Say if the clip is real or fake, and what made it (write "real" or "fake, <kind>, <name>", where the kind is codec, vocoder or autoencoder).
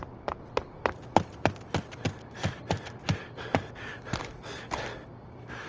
real